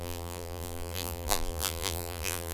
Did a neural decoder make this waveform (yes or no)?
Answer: yes